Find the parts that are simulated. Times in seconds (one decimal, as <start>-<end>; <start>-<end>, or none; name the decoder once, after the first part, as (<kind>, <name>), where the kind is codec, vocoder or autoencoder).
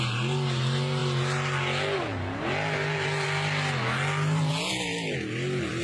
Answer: none